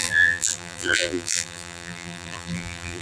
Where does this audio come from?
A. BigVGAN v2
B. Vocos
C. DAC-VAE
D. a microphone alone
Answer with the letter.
A